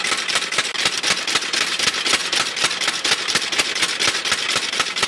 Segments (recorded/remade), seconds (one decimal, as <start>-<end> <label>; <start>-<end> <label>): 0.0-5.1 recorded